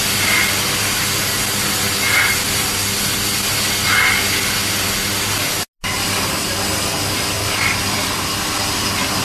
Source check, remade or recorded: recorded